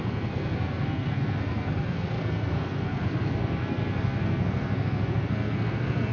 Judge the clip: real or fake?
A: fake